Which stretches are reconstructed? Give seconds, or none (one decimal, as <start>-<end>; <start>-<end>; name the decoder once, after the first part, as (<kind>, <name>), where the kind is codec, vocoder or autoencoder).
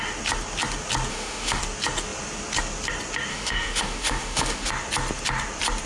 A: 1.1-1.6 (autoencoder, DAC-VAE); 3.3-4.7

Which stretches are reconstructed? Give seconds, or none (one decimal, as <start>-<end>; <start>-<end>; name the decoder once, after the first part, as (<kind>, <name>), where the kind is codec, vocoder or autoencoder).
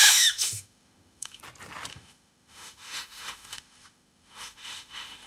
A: 0.0-1.4 (autoencoder, DAC-VAE); 1.9-5.3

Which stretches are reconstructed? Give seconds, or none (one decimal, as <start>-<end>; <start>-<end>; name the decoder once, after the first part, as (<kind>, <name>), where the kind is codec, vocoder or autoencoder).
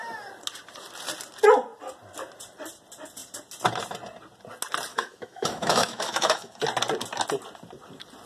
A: 4.9-6.6 (autoencoder, DAC-VAE)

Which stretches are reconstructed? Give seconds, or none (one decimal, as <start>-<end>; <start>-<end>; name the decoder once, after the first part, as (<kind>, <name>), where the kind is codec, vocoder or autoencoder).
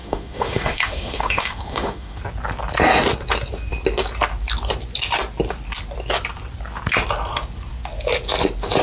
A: 0.0-2.2 (autoencoder, DAC-VAE)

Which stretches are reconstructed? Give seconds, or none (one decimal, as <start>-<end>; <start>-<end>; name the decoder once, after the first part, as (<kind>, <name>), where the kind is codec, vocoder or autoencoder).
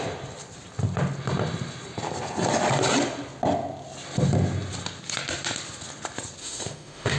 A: 6.4-7.2 (autoencoder, DAC-VAE)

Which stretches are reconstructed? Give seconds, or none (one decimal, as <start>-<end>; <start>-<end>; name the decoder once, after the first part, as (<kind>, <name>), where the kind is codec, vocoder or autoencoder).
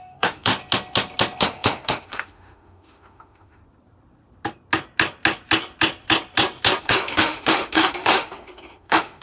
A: 0.0-0.5 (autoencoder, DAC-VAE); 1.4-3.6; 6.8-9.2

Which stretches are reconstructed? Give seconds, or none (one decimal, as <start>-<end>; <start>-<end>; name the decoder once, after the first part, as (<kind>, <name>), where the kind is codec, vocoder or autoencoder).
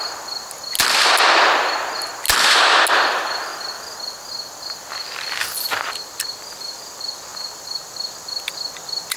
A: none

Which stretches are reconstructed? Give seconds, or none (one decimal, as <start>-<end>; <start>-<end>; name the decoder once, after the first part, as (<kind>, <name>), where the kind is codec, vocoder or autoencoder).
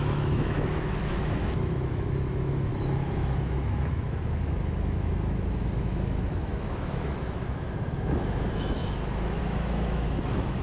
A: 0.0-10.6 (autoencoder, DAC-VAE)